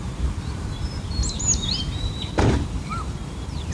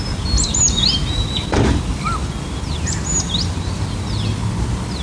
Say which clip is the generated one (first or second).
first